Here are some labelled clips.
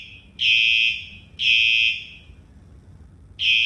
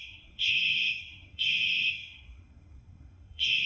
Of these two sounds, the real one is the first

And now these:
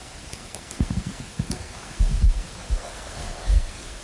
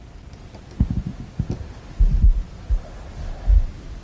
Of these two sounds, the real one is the second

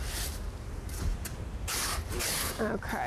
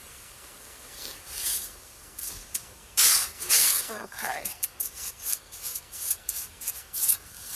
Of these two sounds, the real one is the first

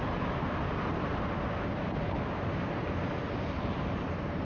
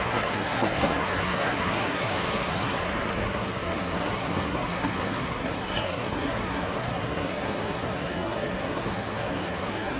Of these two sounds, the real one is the first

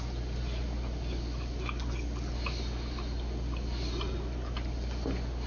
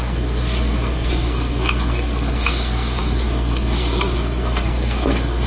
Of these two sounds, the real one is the first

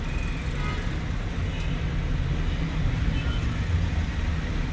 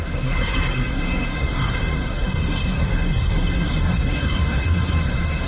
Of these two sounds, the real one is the first